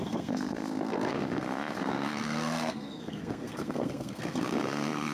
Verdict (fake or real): fake